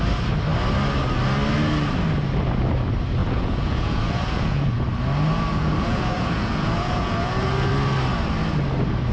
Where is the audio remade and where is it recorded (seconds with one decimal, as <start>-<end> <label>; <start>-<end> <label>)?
0.0-3.2 recorded; 3.2-4.8 remade; 4.8-5.5 recorded; 5.5-7.7 remade; 7.7-9.1 recorded